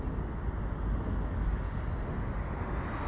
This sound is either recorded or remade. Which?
recorded